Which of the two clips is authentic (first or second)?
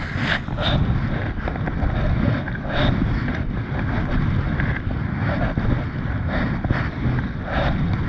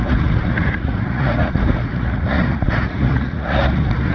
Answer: first